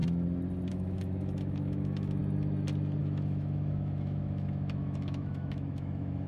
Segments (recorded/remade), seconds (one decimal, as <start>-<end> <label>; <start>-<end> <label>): 0.0-0.7 recorded; 0.7-2.2 remade; 2.2-3.0 recorded; 3.0-6.3 remade